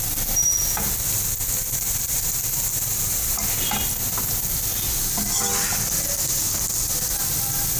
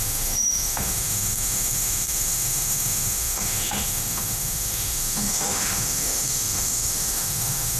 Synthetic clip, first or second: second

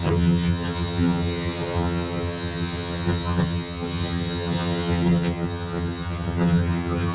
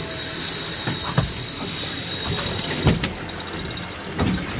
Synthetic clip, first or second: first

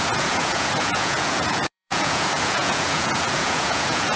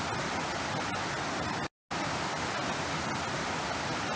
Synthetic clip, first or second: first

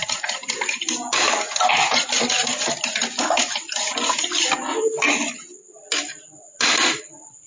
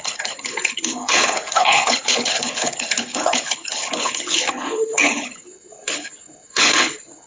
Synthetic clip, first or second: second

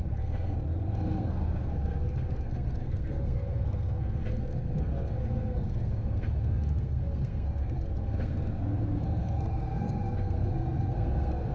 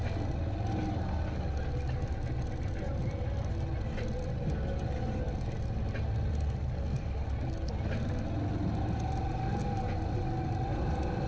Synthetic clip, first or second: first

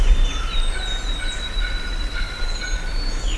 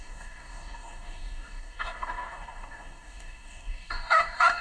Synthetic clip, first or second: second